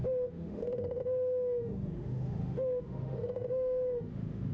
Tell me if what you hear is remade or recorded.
remade